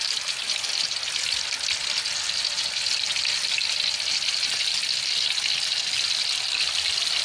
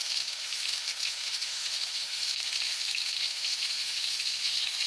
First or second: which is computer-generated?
second